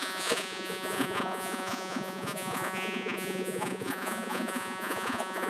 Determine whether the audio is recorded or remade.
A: remade